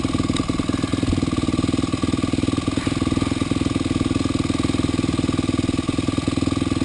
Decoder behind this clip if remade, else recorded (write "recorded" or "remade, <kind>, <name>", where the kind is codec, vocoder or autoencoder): recorded